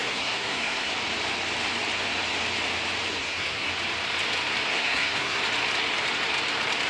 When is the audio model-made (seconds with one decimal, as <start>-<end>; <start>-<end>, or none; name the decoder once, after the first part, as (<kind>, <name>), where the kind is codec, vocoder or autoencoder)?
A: 0.0-0.9 (codec, SNAC); 3.1-3.7; 4.7-5.4